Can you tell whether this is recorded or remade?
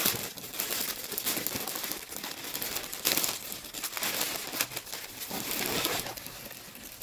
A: recorded